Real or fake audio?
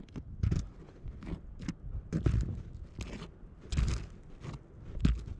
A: real